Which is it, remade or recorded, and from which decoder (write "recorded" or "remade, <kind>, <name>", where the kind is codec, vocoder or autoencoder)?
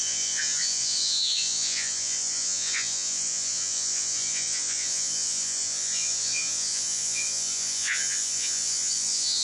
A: remade, vocoder, Vocos